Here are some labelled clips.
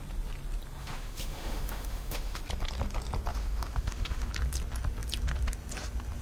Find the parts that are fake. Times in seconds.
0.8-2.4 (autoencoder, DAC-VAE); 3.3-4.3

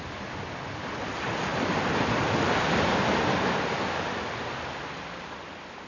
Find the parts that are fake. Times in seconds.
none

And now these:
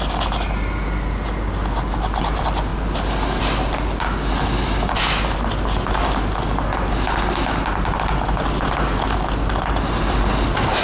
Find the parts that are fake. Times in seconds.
none